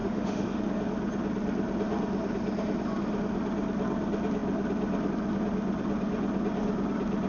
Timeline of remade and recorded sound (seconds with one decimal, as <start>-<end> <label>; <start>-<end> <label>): 0.0-0.6 remade; 0.6-7.3 recorded